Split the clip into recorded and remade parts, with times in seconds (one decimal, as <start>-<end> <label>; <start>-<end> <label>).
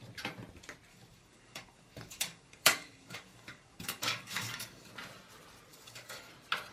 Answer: 0.0-0.9 recorded; 0.9-4.9 remade; 4.9-5.7 recorded; 5.7-6.3 remade; 6.3-6.7 recorded